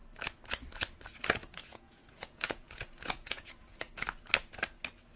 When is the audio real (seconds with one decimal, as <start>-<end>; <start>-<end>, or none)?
0.0-1.4; 3.9-5.2